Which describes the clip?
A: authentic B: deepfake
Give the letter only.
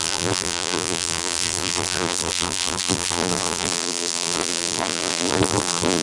B